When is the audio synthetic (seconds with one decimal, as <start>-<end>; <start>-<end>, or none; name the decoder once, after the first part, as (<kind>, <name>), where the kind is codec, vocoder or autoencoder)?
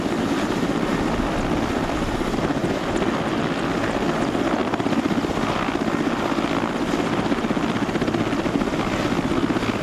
none